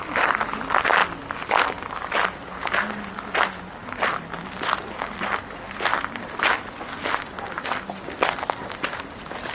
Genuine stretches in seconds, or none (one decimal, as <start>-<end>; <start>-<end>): 0.0-3.8; 5.4-5.9; 7.8-9.5